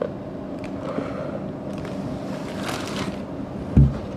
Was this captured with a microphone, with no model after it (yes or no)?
yes